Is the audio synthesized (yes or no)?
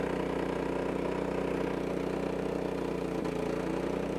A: no